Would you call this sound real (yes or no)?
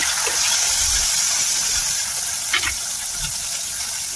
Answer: yes